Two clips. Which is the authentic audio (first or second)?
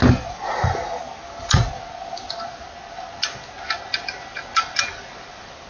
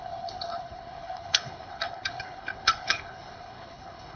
first